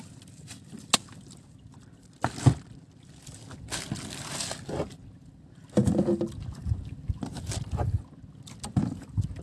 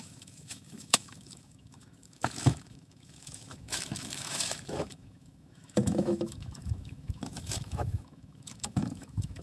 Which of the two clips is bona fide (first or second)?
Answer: first